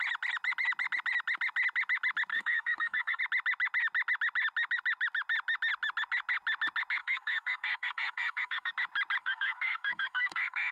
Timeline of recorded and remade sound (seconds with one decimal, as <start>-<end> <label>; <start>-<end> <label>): 0.0-2.3 recorded; 2.3-3.2 remade; 3.2-7.0 recorded; 7.0-8.7 remade; 8.7-9.2 recorded; 9.2-10.7 remade